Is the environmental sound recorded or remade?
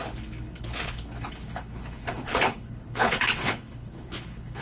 remade